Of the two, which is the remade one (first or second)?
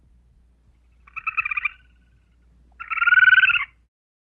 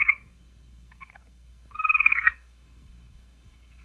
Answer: second